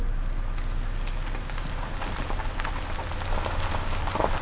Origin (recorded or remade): recorded